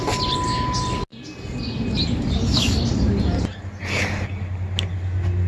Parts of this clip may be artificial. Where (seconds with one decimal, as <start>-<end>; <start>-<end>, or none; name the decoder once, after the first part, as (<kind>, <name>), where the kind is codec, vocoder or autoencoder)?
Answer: none